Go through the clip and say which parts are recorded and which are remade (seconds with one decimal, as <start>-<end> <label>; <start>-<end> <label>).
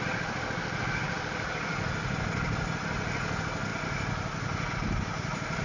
0.0-5.6 recorded